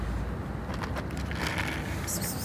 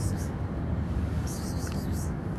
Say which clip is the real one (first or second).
first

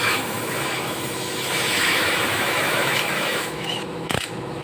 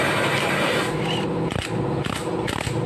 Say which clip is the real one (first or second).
second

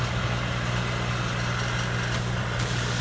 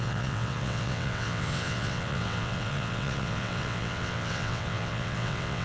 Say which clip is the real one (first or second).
first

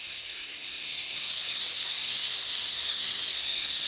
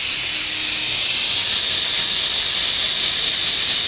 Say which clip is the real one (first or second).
second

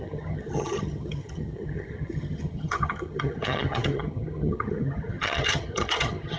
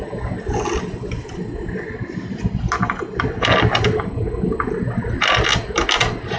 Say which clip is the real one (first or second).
second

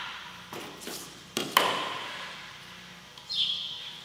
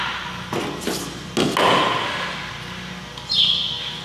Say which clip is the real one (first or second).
second